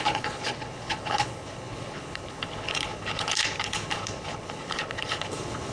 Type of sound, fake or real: fake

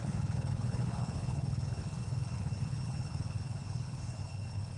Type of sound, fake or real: fake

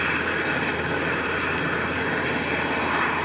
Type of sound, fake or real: real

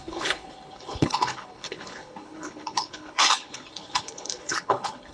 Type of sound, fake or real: fake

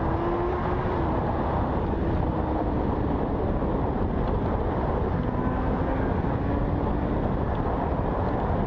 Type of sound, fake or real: real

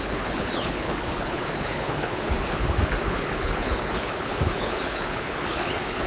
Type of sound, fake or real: fake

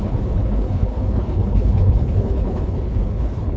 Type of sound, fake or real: fake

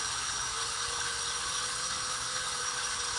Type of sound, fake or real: fake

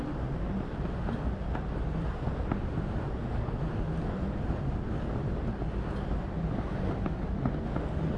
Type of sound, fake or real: real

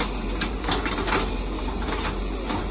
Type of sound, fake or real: real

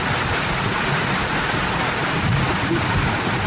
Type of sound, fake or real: real